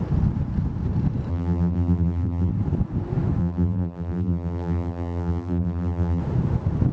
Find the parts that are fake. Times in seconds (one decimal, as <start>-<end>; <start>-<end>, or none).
1.3-2.5; 3.4-6.2

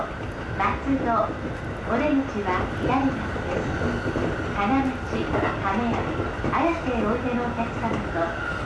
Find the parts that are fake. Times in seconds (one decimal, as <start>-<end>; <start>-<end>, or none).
none

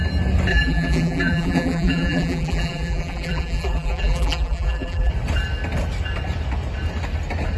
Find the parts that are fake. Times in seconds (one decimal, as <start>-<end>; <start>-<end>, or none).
0.5-5.1

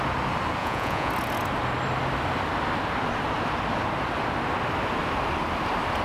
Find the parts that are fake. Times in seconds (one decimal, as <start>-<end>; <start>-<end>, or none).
0.6-1.1

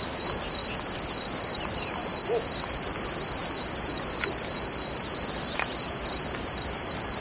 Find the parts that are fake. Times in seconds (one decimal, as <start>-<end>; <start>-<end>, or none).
0.0-0.6; 1.6-2.0; 3.0-3.4; 4.5-7.2

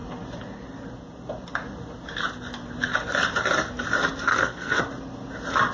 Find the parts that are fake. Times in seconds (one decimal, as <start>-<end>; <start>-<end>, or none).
4.3-4.8

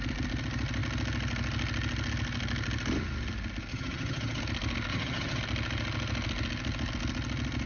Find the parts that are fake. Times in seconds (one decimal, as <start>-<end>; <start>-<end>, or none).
3.7-4.4; 4.9-5.4